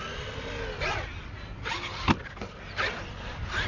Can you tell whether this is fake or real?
real